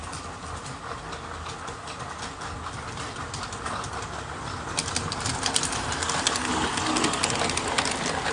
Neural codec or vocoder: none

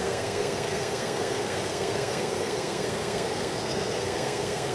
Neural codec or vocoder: codec, SNAC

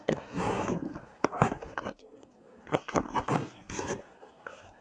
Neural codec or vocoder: codec, SNAC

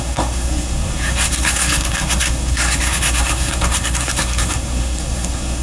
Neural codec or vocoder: codec, SNAC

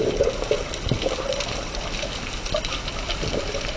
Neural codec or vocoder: none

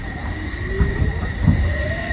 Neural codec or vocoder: vocoder, BigVGAN v2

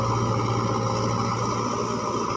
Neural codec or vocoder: none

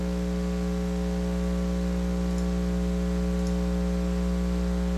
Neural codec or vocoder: none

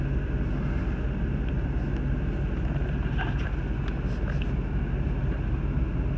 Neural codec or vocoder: none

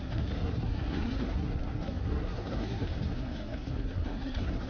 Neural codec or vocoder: codec, SNAC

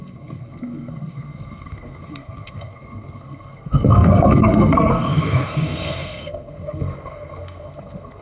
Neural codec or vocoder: codec, SNAC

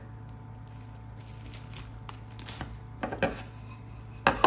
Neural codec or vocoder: none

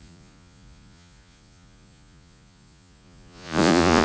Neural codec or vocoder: vocoder, Vocos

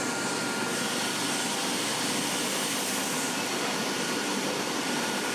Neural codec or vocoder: none